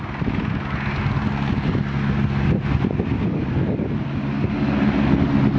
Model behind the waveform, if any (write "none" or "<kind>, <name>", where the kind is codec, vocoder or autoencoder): none